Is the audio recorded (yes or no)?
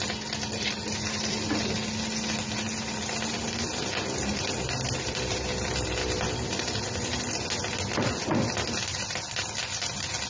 yes